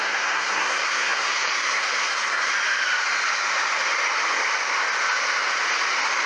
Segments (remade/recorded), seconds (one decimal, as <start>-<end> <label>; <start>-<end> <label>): 0.0-2.5 remade; 2.5-6.3 recorded